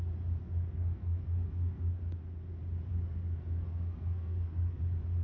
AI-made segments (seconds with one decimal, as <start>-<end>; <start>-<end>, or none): 0.4-2.0; 2.9-4.8